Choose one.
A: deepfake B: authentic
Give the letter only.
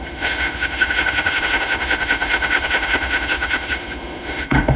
A